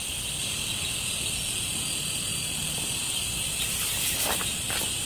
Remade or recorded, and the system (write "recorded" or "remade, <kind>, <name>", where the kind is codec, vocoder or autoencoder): recorded